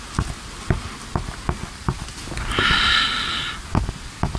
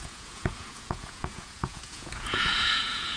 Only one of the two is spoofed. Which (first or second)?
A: second